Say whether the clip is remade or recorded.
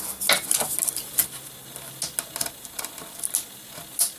recorded